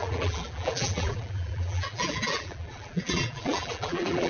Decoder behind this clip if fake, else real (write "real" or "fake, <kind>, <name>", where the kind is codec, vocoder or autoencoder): fake, vocoder, BigVGAN v2